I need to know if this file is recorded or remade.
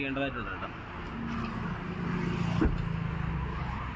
recorded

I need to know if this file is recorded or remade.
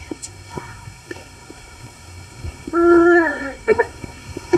remade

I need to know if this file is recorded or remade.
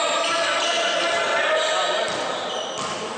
recorded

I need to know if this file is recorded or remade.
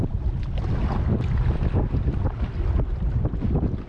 recorded